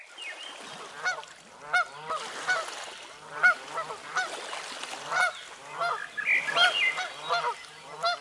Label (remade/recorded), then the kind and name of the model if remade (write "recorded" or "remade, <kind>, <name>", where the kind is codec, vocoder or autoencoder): recorded